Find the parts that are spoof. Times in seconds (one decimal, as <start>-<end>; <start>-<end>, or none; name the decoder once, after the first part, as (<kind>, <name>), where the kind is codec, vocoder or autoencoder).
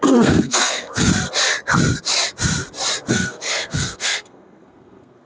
0.0-1.1 (codec, SNAC); 3.1-5.3